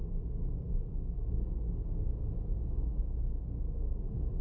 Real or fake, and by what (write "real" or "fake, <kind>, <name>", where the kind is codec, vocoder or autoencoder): fake, codec, SNAC